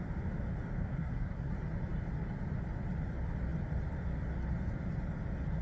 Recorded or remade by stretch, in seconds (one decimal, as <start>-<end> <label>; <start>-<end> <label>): 0.0-0.8 recorded; 0.8-1.5 remade; 1.5-5.6 recorded